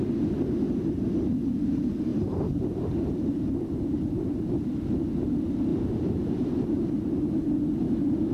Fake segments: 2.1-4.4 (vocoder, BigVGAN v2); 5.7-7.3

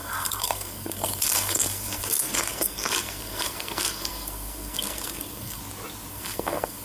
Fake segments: 0.0-5.6 (codec, SNAC); 6.1-6.8

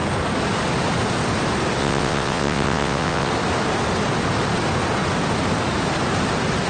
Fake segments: 1.8-3.3 (vocoder, WaveNeXt)

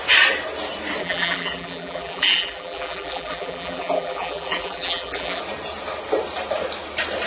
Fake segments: 1.0-5.4 (vocoder, BigVGAN v2)

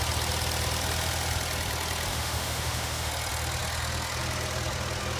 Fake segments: 2.1-3.1 (autoencoder, DAC-VAE)

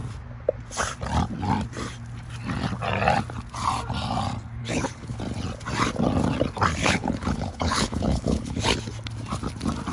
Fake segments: 4.6-5.2 (codec, HILCodec); 6.8-8.6